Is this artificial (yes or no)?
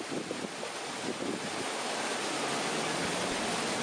no